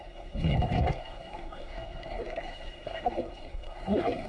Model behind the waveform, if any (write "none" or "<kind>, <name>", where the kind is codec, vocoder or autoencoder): codec, SNAC